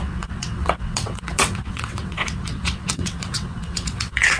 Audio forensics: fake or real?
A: fake